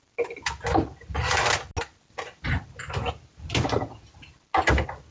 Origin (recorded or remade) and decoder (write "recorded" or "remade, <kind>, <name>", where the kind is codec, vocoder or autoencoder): recorded